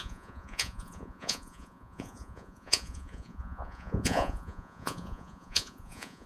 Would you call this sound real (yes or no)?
no